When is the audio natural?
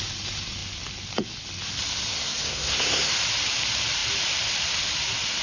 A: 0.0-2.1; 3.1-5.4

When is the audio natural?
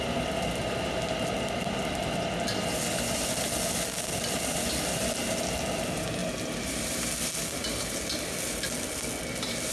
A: 0.0-9.7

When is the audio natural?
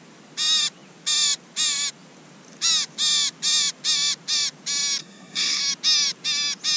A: 0.0-5.0; 5.6-6.8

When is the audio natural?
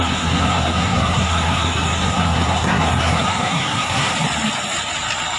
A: 4.1-5.4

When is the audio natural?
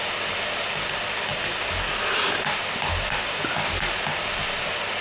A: 0.0-5.0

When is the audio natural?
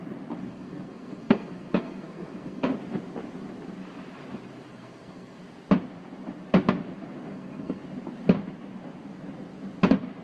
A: 0.0-0.5; 2.7-4.7; 5.4-7.3; 7.8-10.2